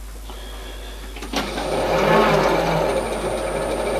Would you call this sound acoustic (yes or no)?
yes